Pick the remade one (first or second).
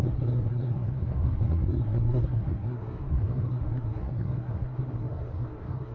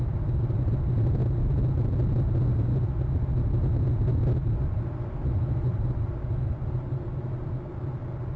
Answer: first